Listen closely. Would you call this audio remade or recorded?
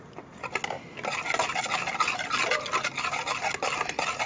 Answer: recorded